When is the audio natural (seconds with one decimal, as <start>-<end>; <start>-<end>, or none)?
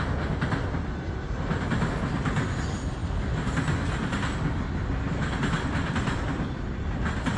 0.0-7.4